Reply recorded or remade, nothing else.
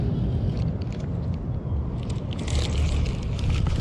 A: recorded